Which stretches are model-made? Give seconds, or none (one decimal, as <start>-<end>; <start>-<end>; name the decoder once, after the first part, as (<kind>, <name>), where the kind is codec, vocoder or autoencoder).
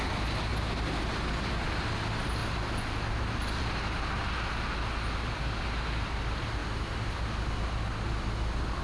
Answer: none